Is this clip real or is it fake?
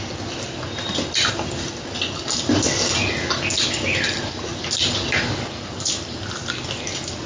real